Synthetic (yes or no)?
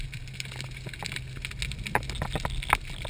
no